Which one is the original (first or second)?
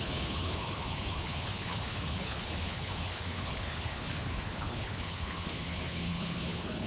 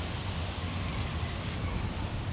second